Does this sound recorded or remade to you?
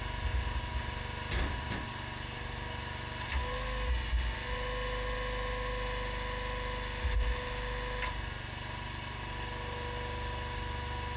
recorded